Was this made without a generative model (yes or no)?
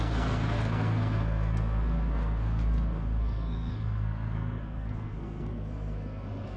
no